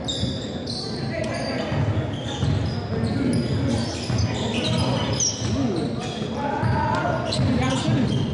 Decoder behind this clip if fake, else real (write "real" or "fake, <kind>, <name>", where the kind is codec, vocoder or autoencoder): real